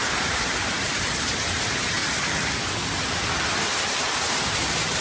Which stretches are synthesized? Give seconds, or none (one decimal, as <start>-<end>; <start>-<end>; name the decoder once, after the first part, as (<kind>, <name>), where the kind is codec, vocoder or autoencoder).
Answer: 0.0-2.0 (vocoder, BigVGAN v2); 3.8-5.0